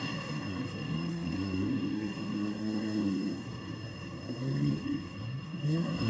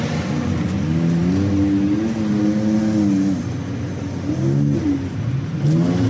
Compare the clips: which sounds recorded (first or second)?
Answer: second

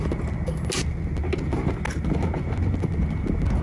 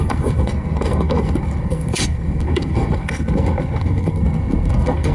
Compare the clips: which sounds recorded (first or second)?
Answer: first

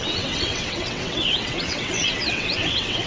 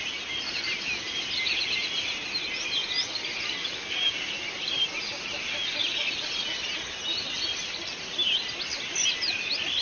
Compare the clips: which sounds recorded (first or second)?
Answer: second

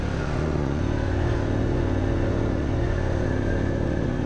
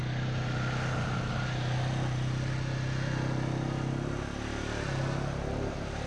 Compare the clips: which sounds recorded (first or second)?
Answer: second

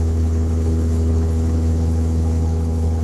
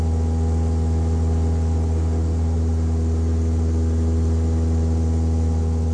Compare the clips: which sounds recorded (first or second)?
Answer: second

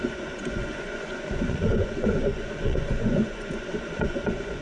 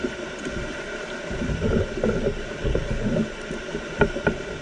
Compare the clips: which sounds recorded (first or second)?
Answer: second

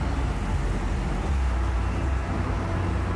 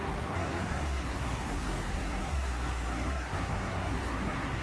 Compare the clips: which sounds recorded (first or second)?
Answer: first